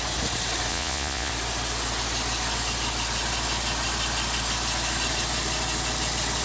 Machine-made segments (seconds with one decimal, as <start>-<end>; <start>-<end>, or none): 0.7-1.3